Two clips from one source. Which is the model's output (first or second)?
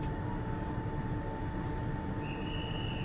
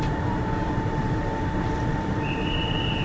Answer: second